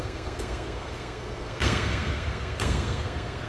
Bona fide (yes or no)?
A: no